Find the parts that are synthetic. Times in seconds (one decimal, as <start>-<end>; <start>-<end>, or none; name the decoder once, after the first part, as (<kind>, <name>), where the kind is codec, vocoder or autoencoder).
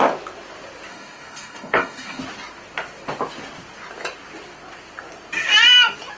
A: 0.9-2.2 (codec, DAC)